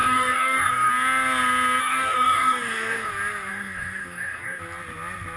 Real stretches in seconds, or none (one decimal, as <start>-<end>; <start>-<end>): 0.9-1.8; 3.1-3.5; 4.6-5.4